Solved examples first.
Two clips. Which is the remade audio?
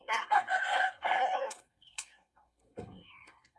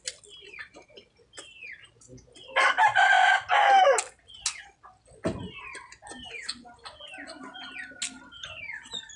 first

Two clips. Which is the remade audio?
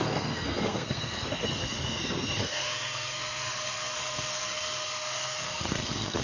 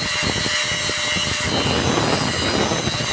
first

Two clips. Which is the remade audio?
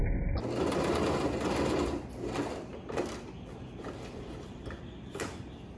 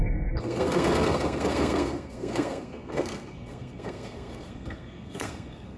second